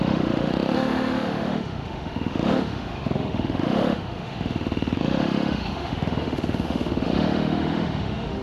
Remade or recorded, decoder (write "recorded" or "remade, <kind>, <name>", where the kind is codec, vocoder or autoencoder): remade, autoencoder, DAC-VAE